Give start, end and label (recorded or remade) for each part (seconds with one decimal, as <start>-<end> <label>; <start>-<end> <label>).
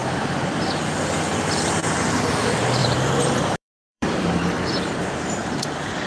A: 0.0-2.8 recorded; 2.8-5.6 remade; 5.6-6.1 recorded